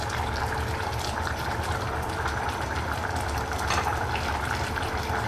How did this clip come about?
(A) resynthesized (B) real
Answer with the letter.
B